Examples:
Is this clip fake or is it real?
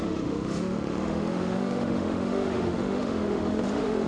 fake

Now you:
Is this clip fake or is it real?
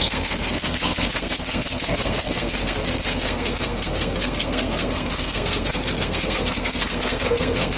fake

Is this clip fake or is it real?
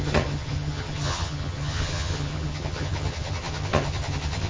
fake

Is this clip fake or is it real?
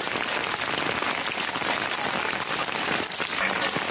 real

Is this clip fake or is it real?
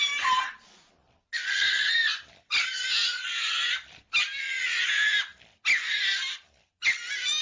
real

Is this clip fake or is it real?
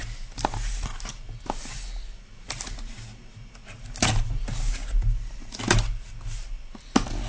real